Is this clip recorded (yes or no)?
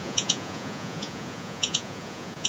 no